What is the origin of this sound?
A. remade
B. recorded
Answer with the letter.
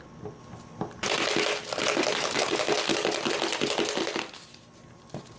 B